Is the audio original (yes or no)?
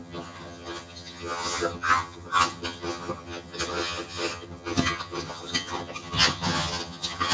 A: no